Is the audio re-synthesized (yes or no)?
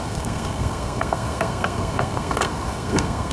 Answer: yes